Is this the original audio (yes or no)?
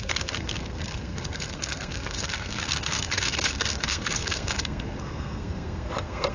no